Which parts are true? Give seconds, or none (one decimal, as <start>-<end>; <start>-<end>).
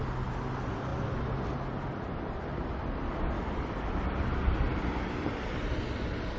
0.0-6.4